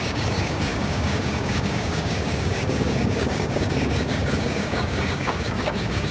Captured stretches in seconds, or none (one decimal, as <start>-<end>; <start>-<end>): none